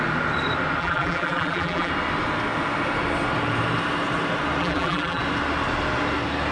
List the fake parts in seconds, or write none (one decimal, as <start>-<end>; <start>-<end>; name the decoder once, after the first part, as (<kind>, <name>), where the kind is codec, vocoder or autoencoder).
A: 0.8-1.9 (vocoder, BigVGAN v2); 4.6-5.2